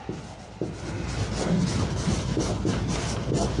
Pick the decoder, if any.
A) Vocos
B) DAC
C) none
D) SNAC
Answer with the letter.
C